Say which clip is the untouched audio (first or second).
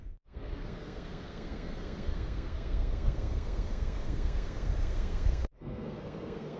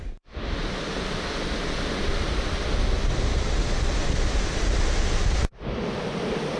second